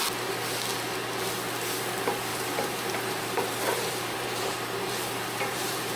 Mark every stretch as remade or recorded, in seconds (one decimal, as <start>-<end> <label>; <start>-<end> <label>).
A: 0.0-2.3 recorded; 2.3-6.0 remade